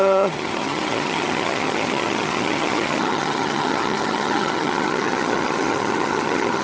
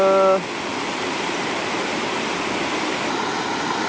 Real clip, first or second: second